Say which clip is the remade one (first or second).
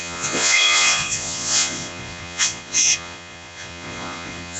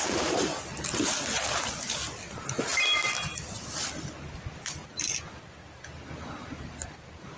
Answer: first